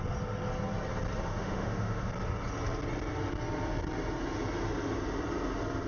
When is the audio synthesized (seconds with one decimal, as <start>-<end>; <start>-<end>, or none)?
1.3-2.1